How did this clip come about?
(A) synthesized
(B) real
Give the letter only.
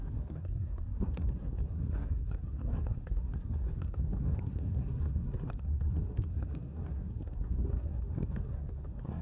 A